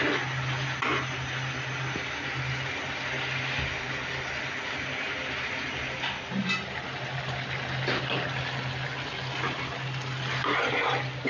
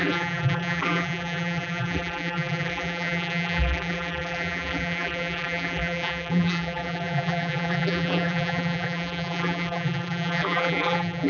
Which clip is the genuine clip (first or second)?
first